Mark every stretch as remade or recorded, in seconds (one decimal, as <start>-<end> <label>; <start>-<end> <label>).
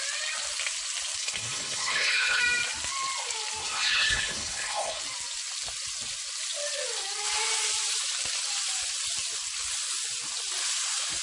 0.0-1.2 recorded; 1.2-2.4 remade; 2.4-3.6 recorded; 3.6-5.0 remade; 5.0-11.2 recorded